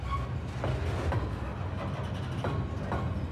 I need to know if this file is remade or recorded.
recorded